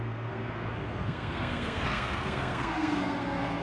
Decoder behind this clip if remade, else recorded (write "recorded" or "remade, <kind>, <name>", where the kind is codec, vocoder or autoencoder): remade, codec, SNAC